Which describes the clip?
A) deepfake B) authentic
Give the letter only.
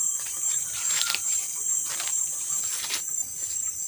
A